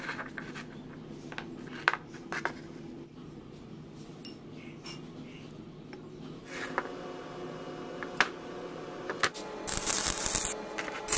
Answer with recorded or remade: recorded